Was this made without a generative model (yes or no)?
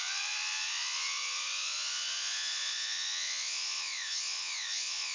no